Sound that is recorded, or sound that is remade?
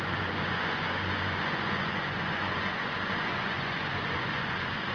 remade